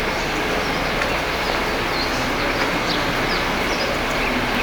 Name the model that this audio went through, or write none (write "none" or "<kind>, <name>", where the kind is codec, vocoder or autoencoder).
none